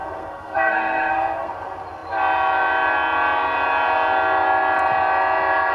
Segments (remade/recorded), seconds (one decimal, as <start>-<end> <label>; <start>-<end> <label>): 0.0-1.5 remade; 1.5-5.7 recorded